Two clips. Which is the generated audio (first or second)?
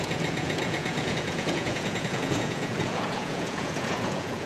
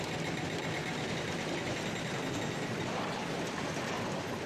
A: first